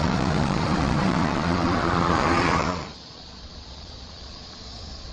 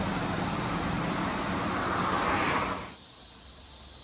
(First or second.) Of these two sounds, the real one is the second